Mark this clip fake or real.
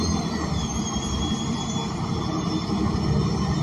real